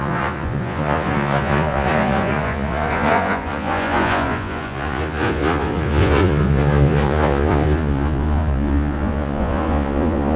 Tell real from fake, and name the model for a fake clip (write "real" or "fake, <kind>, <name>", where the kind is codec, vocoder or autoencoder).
fake, vocoder, Vocos